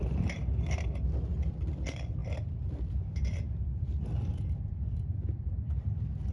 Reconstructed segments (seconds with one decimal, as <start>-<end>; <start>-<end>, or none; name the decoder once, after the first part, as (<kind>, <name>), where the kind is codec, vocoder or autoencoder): 0.0-6.3 (vocoder, BigVGAN v2)